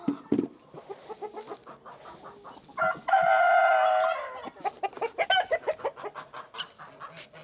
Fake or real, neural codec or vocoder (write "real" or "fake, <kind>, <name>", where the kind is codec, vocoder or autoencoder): real